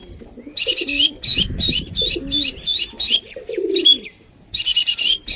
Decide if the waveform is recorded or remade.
recorded